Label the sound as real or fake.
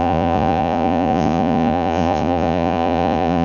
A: fake